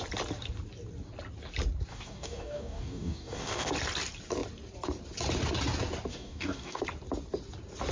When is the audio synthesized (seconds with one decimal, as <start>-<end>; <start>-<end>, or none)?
1.9-3.7; 6.1-6.8